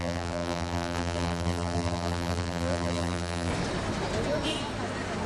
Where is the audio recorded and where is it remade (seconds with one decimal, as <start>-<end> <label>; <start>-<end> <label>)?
0.0-3.5 remade; 3.5-5.3 recorded